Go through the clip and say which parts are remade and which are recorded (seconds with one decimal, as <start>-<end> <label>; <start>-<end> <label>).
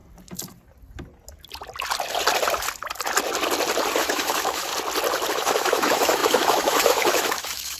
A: 0.0-4.0 recorded; 4.0-4.7 remade; 4.7-5.3 recorded; 5.3-7.8 remade